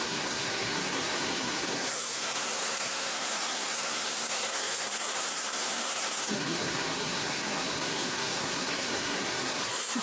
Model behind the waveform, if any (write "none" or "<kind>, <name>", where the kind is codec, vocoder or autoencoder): codec, SNAC